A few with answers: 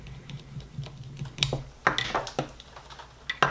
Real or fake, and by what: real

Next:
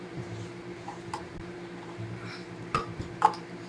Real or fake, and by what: fake, vocoder, BigVGAN v2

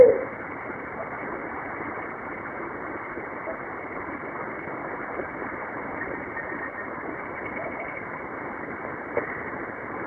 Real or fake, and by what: real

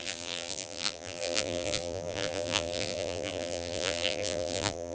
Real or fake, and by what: fake, vocoder, BigVGAN v2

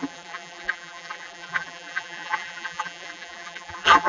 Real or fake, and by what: fake, vocoder, BigVGAN v2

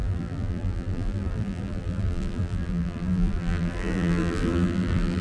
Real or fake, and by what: fake, vocoder, BigVGAN v2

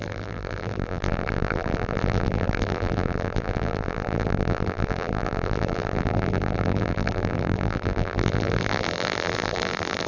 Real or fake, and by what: fake, vocoder, BigVGAN v2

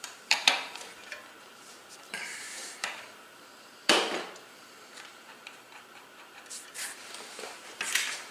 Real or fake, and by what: fake, vocoder, BigVGAN v2